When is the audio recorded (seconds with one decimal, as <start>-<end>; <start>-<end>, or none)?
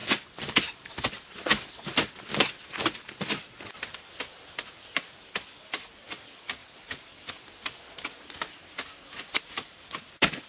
0.0-6.6; 7.3-10.5